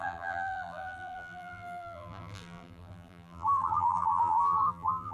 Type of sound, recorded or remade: remade